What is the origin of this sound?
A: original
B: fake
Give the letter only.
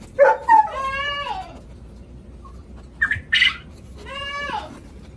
A